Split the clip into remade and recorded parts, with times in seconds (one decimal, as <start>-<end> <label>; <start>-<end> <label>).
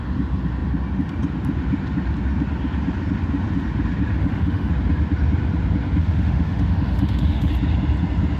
0.0-4.2 recorded; 4.2-4.7 remade; 4.7-6.0 recorded; 6.0-7.5 remade; 7.5-8.4 recorded